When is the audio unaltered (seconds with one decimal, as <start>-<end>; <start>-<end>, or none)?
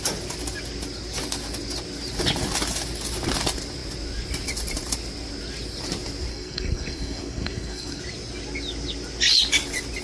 0.0-6.3; 8.0-10.0